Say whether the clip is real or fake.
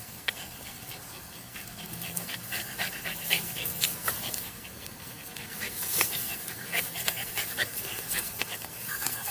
fake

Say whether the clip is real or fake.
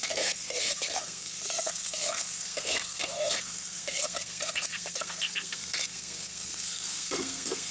fake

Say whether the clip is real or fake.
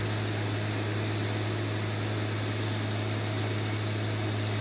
real